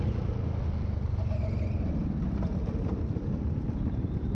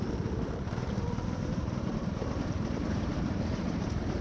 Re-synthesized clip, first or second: second